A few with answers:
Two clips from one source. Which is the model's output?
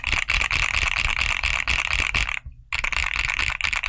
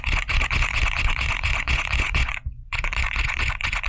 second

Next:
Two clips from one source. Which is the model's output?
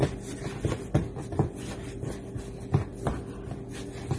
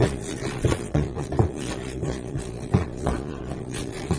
second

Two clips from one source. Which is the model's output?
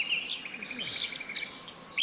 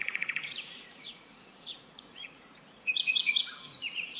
second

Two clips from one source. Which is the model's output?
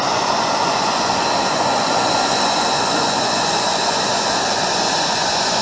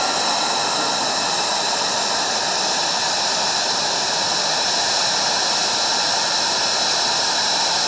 first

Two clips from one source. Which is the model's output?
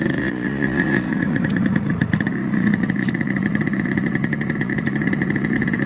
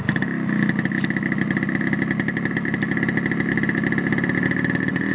first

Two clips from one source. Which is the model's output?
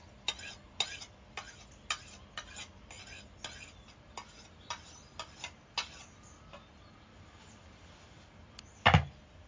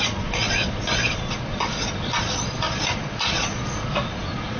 second